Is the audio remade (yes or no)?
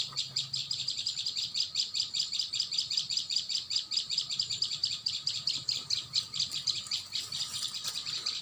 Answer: yes